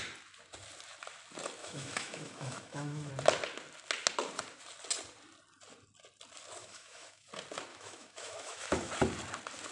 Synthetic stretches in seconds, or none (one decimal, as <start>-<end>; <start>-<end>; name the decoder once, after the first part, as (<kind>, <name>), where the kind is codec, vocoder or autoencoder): 1.6-3.1 (autoencoder, DAC-VAE); 6.6-7.3; 7.7-8.9